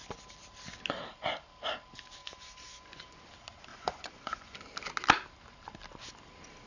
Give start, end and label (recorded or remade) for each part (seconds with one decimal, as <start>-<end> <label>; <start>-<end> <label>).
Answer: 0.0-2.2 recorded; 2.2-3.2 remade; 3.2-3.7 recorded; 3.7-4.6 remade; 4.6-6.7 recorded